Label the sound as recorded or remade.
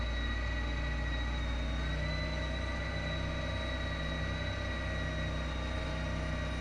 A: recorded